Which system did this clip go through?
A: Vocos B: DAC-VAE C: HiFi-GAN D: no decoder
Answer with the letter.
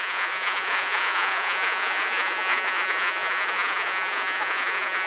A